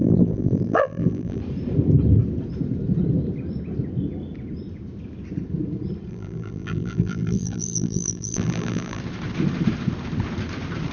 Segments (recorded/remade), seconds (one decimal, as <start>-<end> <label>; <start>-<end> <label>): 0.0-1.4 remade; 1.4-6.1 recorded; 6.1-9.0 remade; 9.0-10.9 recorded